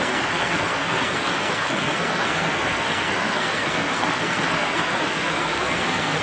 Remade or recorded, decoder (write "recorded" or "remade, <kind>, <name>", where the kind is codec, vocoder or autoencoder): remade, codec, SNAC